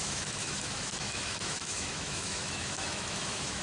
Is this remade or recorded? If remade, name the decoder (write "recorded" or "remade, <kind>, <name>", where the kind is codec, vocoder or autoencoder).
remade, autoencoder, DAC-VAE